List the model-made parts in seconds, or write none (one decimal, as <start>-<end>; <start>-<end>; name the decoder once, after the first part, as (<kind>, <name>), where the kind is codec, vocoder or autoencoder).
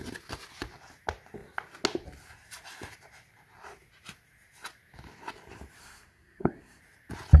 5.8-6.8 (codec, SNAC)